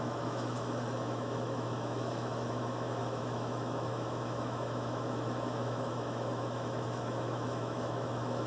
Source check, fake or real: fake